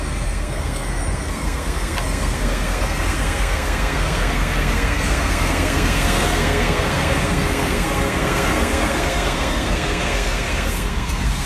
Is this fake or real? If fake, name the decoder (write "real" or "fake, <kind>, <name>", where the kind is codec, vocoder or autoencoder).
fake, codec, SNAC